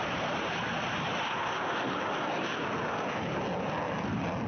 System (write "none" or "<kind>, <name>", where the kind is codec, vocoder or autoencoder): none